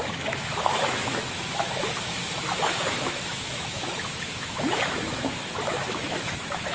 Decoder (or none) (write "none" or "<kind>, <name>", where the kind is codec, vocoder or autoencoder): autoencoder, DAC-VAE